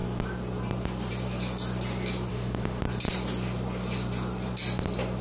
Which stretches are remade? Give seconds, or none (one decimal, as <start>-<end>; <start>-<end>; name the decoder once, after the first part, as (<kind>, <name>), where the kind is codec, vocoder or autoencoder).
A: 2.3-2.8 (autoencoder, DAC-VAE)